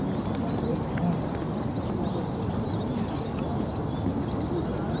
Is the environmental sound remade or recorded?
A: recorded